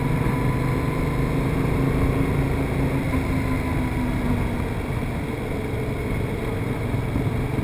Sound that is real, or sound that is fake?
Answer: real